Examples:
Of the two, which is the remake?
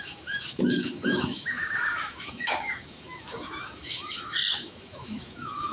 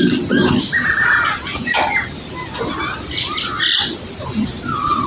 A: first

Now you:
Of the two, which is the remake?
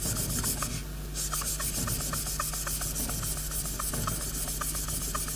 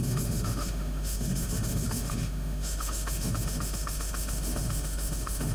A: second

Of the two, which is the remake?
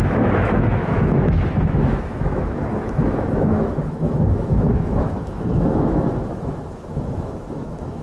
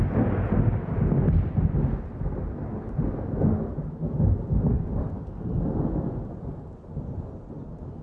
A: first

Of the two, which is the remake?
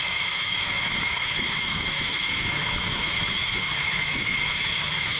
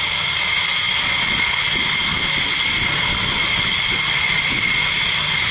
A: first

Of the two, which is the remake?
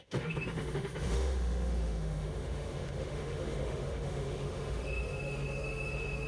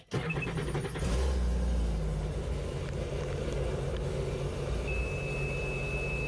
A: first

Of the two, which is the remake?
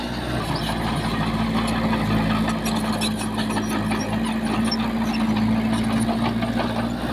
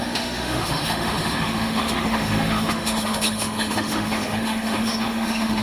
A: second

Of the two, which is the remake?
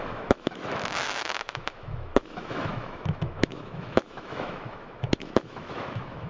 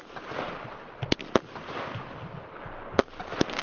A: first